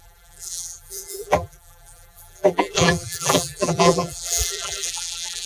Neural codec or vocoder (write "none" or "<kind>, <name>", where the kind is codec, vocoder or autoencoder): vocoder, BigVGAN v2